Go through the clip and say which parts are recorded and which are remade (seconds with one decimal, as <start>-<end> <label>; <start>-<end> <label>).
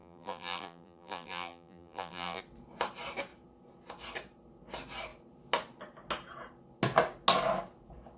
0.0-2.4 remade; 2.4-8.2 recorded